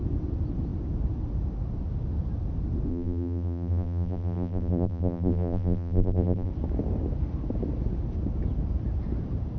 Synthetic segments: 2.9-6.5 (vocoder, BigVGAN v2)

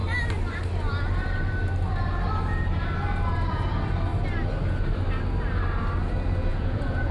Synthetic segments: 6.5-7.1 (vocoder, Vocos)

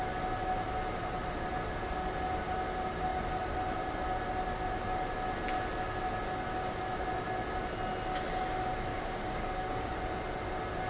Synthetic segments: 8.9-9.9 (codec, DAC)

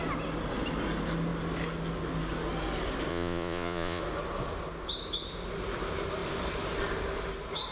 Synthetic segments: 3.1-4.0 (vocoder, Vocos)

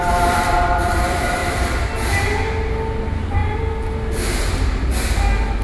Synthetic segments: 3.4-3.9 (vocoder, BigVGAN v2)